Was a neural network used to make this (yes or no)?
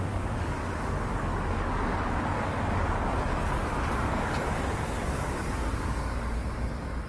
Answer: yes